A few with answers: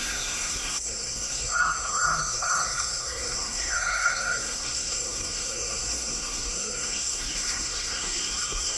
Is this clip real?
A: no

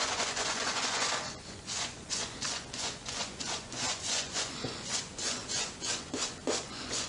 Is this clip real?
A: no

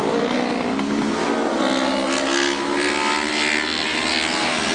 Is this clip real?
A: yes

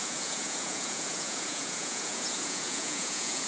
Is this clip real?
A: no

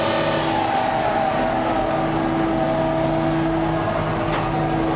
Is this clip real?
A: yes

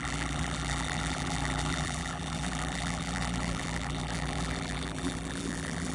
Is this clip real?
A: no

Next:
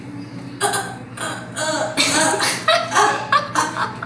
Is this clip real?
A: no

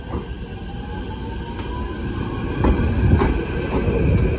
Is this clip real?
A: yes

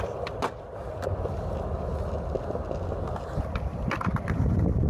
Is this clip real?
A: yes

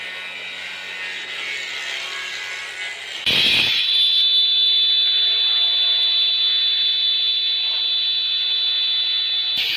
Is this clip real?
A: yes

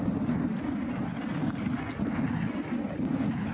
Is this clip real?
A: yes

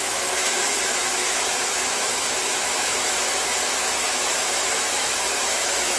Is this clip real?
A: no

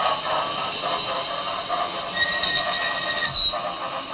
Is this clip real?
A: yes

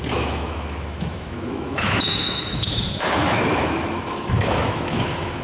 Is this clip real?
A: no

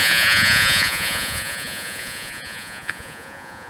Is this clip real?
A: no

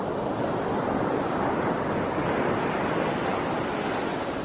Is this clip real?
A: yes